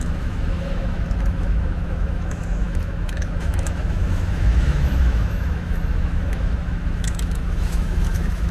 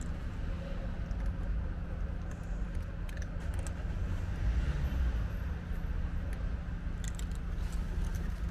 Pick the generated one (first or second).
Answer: first